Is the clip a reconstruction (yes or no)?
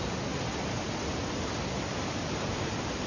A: no